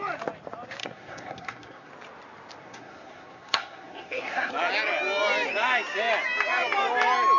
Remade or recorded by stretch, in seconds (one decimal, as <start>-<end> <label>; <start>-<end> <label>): 0.0-0.8 recorded; 0.8-1.9 remade; 1.9-2.6 recorded; 2.6-4.5 remade; 4.5-7.4 recorded